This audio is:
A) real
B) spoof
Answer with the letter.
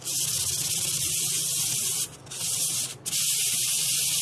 B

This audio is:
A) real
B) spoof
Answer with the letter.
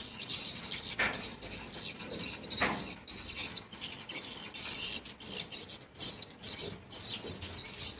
A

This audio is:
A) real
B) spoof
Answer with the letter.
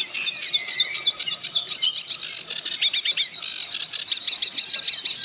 A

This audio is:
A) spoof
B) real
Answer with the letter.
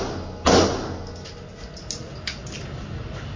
B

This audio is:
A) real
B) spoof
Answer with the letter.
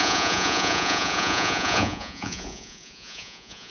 B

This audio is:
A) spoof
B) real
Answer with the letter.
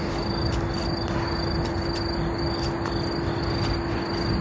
B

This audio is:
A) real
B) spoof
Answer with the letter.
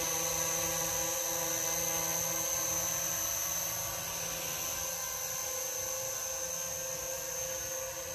A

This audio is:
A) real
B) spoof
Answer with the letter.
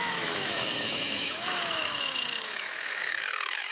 B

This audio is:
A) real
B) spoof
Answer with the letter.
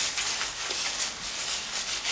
B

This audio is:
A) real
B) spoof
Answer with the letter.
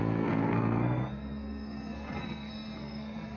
B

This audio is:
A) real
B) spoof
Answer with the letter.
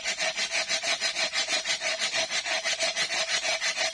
A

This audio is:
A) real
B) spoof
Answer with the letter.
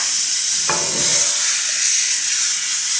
A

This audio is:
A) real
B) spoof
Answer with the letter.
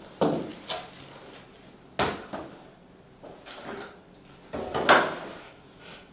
A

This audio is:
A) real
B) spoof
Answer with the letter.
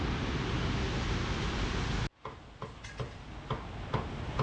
A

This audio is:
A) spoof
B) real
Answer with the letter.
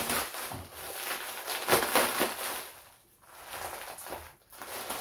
B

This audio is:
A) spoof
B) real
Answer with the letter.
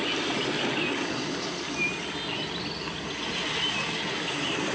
B